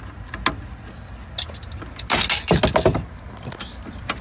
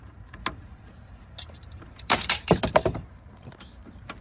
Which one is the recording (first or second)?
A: first